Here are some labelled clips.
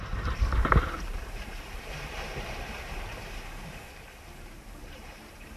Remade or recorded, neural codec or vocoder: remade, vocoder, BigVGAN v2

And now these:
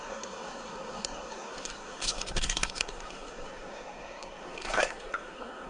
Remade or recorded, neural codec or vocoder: remade, codec, SNAC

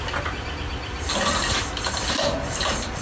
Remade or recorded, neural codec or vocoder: remade, vocoder, BigVGAN v2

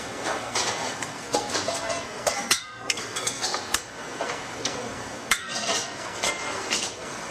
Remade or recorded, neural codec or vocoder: remade, codec, SNAC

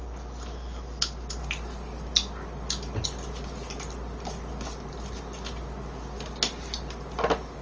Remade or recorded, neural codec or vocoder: recorded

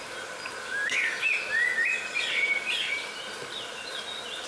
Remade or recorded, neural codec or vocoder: recorded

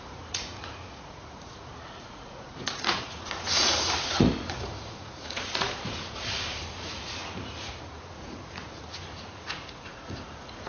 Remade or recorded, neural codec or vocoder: remade, vocoder, Vocos